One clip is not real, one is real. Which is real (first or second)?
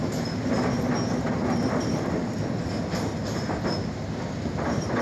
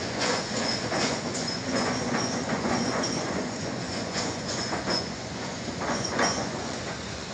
first